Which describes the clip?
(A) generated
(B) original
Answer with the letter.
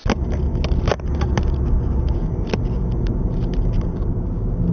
B